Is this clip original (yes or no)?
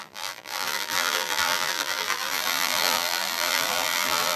no